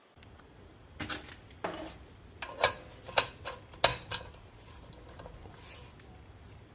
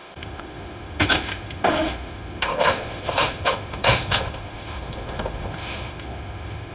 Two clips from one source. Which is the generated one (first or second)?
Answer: second